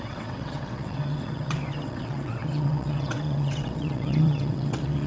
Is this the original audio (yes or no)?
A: no